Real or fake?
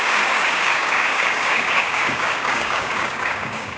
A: fake